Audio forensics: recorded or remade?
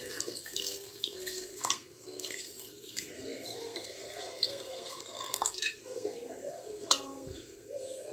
remade